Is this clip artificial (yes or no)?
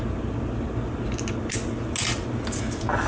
no